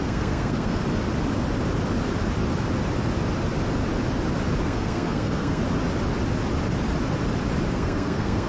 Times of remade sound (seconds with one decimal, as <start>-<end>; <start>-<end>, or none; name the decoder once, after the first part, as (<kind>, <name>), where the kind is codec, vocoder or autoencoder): 0.0-0.8 (codec, SNAC); 4.6-5.6; 7.7-8.5